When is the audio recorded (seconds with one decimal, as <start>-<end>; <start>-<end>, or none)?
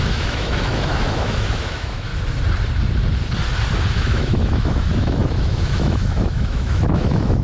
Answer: 2.1-3.9